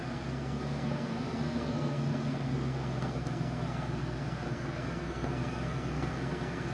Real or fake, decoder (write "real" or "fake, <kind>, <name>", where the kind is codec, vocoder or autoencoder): fake, codec, SNAC